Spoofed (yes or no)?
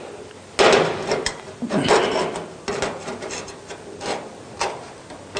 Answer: no